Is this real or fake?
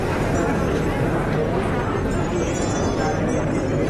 real